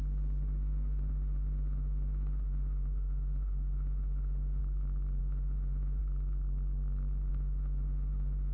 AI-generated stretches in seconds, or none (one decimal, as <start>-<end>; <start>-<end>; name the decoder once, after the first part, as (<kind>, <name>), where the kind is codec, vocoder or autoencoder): 0.0-4.6 (autoencoder, DAC-VAE); 5.2-6.0; 7.3-8.5